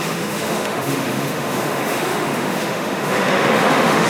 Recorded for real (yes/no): no